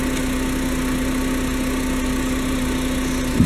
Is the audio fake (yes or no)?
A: no